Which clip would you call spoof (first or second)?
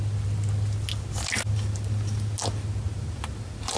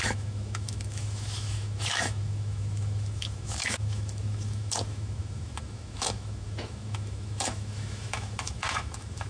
second